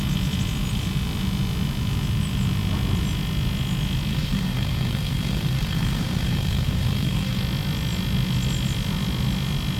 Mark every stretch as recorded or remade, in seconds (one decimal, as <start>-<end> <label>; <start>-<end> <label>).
0.0-4.1 recorded; 4.1-7.4 remade; 7.4-9.8 recorded